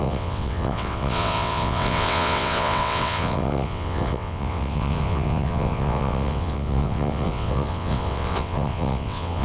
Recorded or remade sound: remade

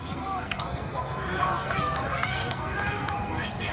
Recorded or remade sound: remade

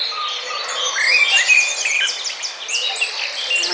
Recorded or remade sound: recorded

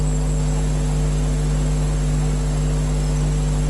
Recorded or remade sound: recorded